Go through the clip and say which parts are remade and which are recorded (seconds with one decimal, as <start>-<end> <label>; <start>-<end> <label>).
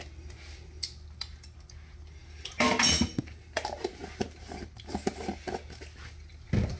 0.0-6.8 recorded